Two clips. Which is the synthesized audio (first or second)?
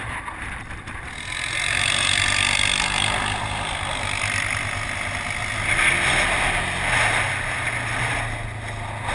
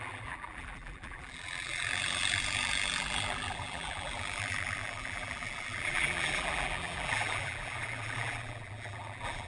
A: second